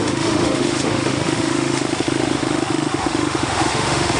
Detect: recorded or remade remade